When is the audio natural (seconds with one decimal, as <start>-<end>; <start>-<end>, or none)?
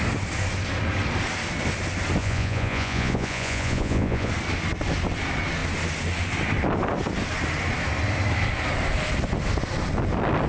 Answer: 0.0-2.2; 4.3-10.5